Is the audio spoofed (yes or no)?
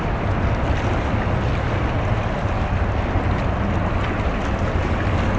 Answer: no